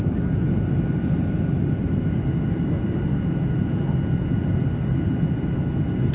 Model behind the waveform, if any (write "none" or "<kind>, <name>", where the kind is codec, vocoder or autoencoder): none